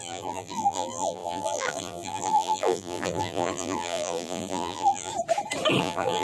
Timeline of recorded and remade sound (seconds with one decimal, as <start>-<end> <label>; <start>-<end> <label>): 0.0-5.1 remade; 5.1-5.8 recorded; 5.8-6.2 remade